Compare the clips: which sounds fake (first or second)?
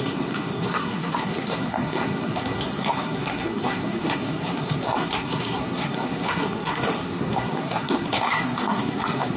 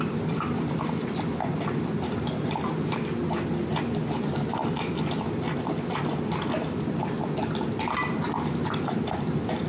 first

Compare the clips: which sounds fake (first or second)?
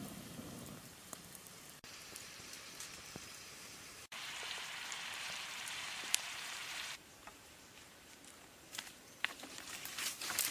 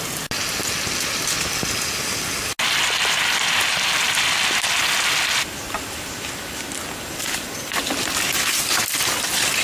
first